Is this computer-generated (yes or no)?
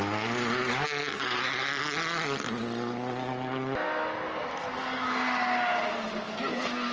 no